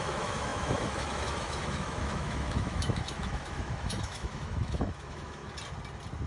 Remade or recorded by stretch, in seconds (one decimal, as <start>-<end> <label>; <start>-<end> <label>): 0.0-5.4 remade; 5.4-6.3 recorded